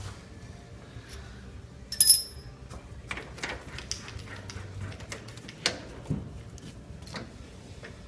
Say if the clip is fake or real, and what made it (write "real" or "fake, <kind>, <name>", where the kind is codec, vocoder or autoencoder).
real